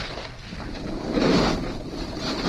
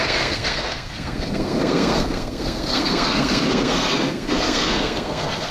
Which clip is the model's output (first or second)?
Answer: second